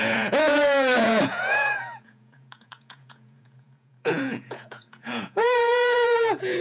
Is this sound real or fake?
fake